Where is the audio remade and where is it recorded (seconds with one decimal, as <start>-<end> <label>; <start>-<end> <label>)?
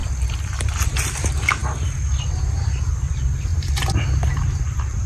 0.0-5.1 recorded